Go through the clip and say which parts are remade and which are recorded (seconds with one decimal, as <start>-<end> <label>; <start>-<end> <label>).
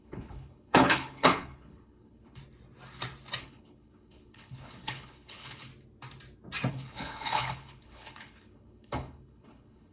0.0-2.4 remade; 2.4-3.4 recorded; 3.4-5.7 remade; 5.7-6.7 recorded; 6.7-9.9 remade